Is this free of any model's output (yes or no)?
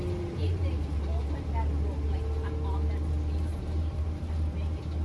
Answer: yes